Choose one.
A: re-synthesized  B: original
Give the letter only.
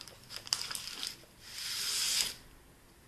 B